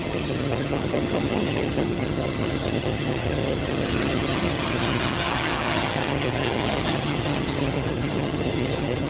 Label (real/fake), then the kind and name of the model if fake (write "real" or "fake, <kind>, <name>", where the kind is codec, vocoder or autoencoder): fake, vocoder, HiFi-GAN